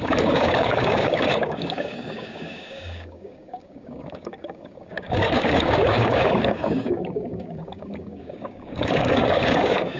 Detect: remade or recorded remade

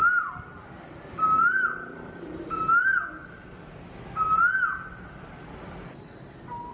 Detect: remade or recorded recorded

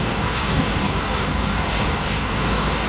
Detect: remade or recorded remade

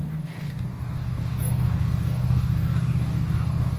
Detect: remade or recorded remade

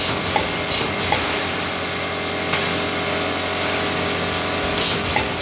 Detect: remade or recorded recorded